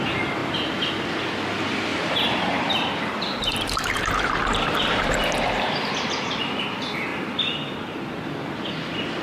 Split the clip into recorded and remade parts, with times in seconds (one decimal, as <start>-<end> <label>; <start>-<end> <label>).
0.0-1.9 recorded; 1.9-6.6 remade; 6.6-9.2 recorded